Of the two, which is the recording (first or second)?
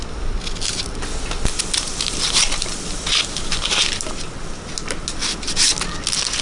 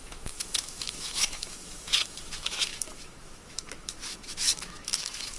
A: first